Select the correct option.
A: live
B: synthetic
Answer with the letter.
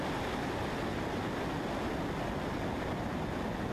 A